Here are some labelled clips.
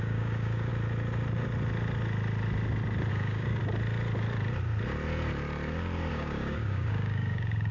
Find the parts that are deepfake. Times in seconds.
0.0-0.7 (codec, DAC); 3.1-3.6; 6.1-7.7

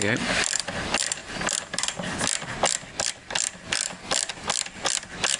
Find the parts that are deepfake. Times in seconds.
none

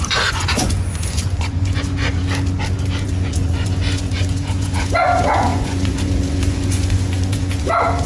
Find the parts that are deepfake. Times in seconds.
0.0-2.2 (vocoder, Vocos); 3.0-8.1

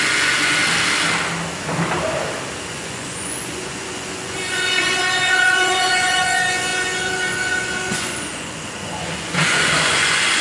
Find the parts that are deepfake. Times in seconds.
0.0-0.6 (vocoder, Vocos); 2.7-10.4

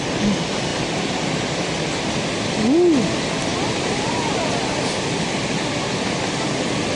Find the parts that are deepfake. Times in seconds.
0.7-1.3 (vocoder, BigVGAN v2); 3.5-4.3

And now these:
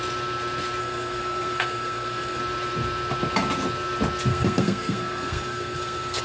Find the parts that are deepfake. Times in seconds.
0.8-2.4 (codec, SNAC); 4.3-6.2

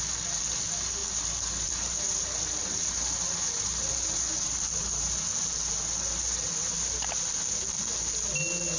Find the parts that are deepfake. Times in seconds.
1.0-4.6 (vocoder, BigVGAN v2)

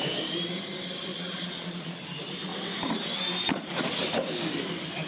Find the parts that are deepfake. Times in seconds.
1.1-2.0 (vocoder, Vocos)